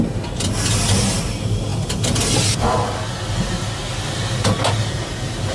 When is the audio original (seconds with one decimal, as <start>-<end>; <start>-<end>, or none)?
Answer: 0.0-5.5